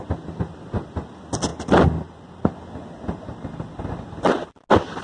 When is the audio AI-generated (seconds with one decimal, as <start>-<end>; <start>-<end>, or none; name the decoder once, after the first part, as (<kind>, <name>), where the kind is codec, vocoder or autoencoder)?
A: none